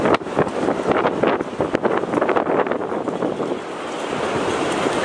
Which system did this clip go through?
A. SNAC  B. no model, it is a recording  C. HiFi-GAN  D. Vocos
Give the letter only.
B